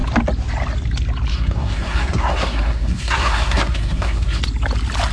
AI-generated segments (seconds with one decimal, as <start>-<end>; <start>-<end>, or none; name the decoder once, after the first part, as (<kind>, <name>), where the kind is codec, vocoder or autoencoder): 1.3-4.4 (codec, SNAC)